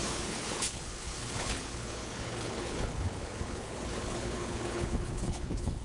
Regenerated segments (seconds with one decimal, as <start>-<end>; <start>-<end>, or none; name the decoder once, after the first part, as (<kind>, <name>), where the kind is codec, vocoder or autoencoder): 0.0-5.8 (codec, HILCodec)